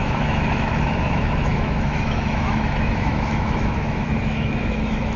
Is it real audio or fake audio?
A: fake